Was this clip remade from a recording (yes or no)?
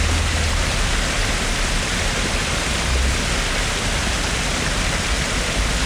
no